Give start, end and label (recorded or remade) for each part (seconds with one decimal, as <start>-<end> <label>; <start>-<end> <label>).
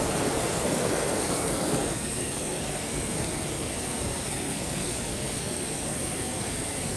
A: 0.0-7.0 remade